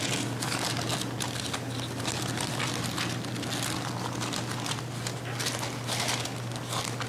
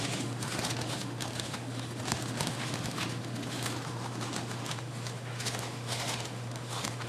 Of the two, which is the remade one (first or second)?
second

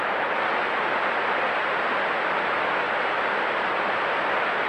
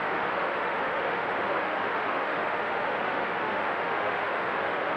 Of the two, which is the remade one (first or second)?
second